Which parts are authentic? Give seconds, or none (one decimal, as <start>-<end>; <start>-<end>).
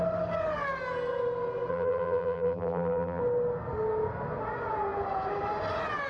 0.0-1.7; 3.2-6.1